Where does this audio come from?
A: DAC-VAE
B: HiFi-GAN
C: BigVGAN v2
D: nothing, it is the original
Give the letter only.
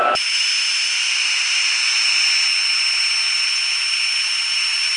D